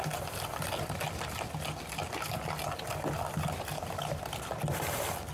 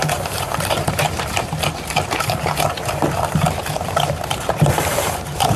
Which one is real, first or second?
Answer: first